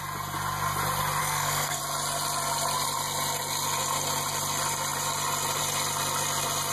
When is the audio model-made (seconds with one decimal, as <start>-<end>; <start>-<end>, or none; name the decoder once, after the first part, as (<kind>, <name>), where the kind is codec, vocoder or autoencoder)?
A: 1.2-1.8 (codec, SNAC)